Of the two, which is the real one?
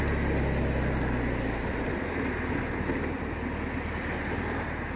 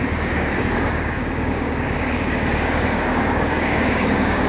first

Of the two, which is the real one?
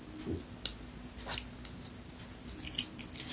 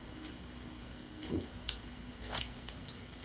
first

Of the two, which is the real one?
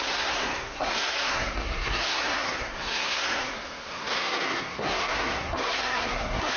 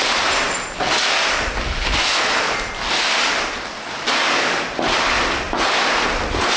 second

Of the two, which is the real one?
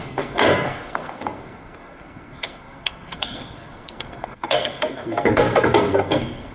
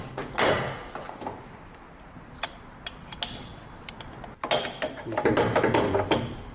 second